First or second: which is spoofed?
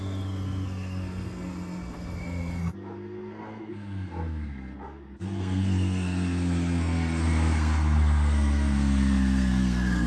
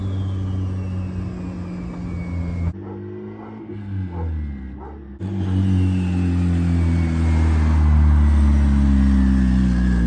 first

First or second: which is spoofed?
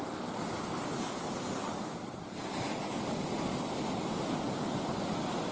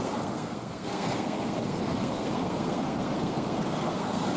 second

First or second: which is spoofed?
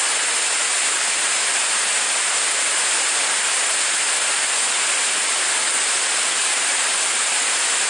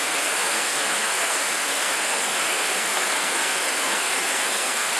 second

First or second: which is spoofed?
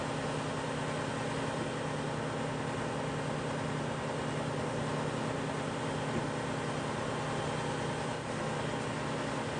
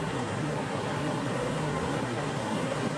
second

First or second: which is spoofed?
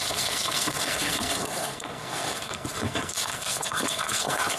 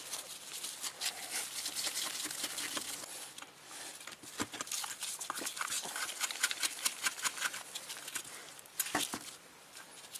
first